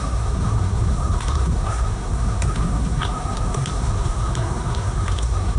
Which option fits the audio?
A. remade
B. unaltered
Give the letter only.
A